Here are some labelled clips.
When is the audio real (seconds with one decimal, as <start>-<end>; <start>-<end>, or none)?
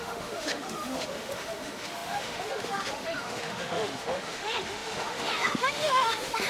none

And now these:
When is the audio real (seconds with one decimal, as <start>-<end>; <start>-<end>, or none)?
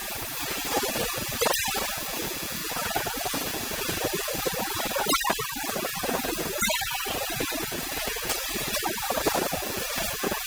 0.9-2.6; 3.2-5.9; 9.2-10.5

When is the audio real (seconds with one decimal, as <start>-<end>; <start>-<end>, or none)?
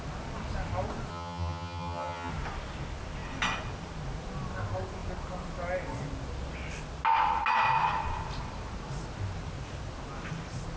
0.0-1.1; 2.3-10.8